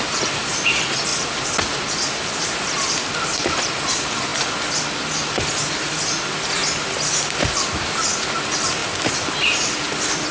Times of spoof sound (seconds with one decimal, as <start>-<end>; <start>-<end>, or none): 0.0-4.3; 4.8-6.6; 7.4-8.8; 9.3-10.3